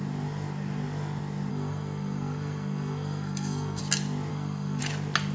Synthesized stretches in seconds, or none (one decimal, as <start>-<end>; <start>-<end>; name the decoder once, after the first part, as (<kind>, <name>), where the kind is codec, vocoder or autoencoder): 1.5-3.8 (codec, SNAC); 4.3-4.8